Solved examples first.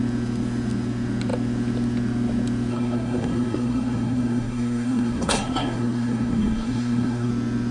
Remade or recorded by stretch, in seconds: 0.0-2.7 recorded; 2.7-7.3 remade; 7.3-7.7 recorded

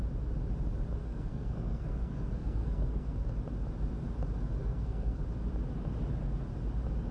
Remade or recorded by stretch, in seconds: 0.0-1.0 recorded; 1.0-3.3 remade; 3.3-4.6 recorded; 4.6-5.2 remade; 5.2-7.1 recorded

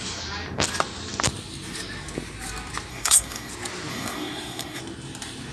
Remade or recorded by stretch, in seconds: 0.0-2.9 recorded; 2.9-3.5 remade; 3.5-3.9 recorded; 3.9-4.8 remade; 4.8-5.5 recorded

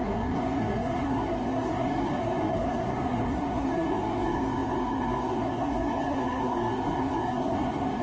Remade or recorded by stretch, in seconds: 0.0-8.0 remade